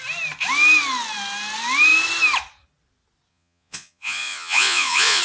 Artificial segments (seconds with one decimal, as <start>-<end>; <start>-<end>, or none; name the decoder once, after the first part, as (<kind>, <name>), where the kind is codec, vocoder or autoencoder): 3.3-5.2 (vocoder, Vocos)